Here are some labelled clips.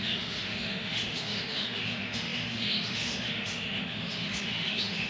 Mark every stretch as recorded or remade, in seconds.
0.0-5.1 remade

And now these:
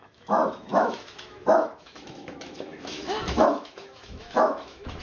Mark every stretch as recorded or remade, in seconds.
0.0-5.0 remade